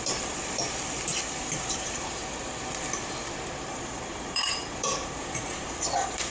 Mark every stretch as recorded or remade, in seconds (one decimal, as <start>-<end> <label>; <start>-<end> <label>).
0.0-1.1 recorded; 1.1-2.2 remade; 2.2-3.7 recorded; 3.7-6.3 remade